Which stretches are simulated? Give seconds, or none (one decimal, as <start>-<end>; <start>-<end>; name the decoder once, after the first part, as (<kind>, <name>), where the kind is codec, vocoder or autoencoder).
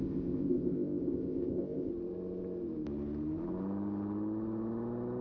0.0-1.9 (codec, ZipCodec)